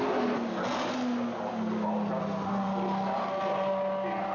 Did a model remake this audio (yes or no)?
no